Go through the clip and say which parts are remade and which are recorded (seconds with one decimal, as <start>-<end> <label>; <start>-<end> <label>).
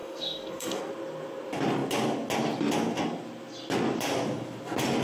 0.0-0.9 remade; 0.9-5.0 recorded